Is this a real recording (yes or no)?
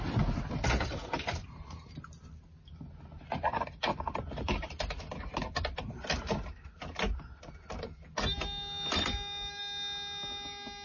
yes